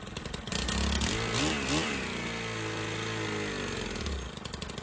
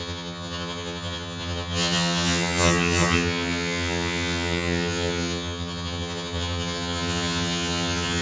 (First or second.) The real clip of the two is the first